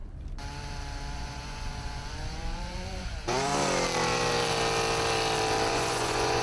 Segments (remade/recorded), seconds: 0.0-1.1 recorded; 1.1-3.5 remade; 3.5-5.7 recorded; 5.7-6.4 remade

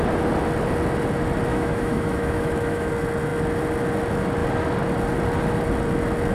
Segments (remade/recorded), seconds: 0.0-1.5 recorded; 1.5-2.9 remade; 2.9-6.3 recorded

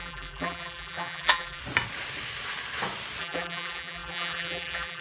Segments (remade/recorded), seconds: 0.0-1.6 remade; 1.6-3.2 recorded; 3.2-5.0 remade

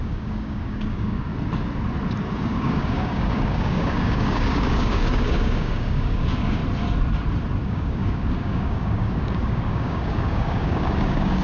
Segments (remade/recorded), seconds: 0.0-1.3 remade; 1.3-2.2 recorded; 2.2-6.6 remade; 6.6-7.6 recorded; 7.6-11.4 remade

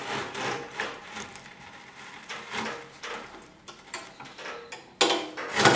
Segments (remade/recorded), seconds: 0.0-2.3 remade; 2.3-3.0 recorded; 3.0-4.0 remade; 4.0-5.8 recorded